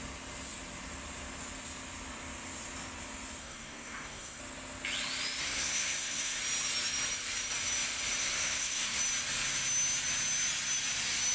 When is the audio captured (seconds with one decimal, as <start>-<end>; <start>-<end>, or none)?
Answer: 0.0-3.4; 4.4-5.4; 6.4-8.2; 9.0-11.3